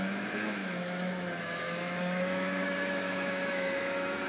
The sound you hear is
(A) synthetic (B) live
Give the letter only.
A